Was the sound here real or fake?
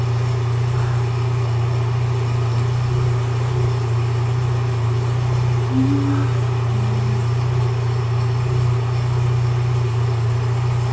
real